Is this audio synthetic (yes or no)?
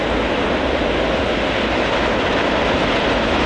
no